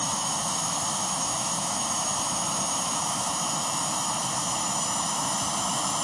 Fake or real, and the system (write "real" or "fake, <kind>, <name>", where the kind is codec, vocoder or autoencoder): fake, autoencoder, DAC-VAE